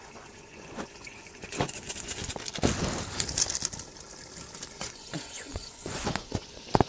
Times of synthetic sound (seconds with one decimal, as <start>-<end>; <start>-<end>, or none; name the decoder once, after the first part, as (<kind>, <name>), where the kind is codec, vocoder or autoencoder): 0.0-2.2 (vocoder, Vocos); 4.7-6.9